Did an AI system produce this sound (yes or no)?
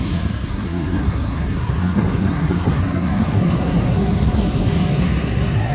yes